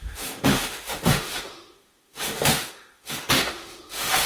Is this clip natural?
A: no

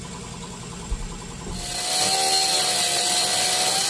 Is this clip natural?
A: yes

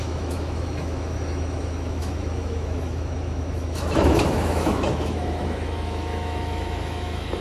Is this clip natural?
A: no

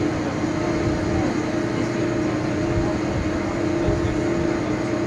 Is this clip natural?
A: yes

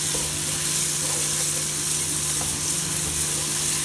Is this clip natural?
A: yes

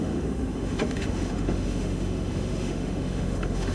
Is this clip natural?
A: no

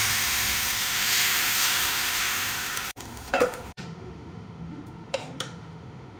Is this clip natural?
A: no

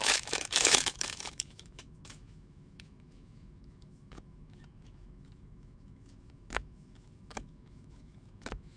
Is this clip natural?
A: no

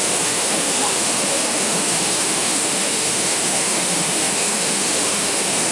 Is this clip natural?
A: no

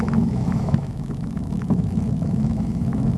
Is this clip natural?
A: no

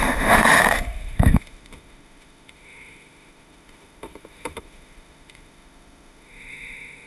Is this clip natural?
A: no